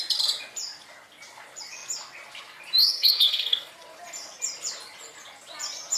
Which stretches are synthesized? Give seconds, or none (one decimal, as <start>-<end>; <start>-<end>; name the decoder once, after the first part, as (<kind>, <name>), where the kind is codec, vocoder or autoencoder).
2.8-3.7 (codec, SNAC)